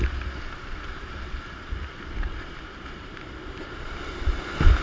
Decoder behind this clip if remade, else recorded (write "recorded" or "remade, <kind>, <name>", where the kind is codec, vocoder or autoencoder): recorded